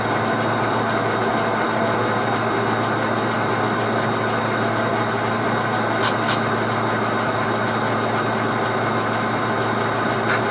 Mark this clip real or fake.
real